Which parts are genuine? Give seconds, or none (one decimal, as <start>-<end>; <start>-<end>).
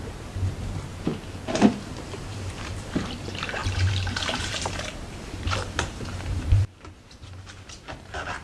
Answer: 1.1-2.3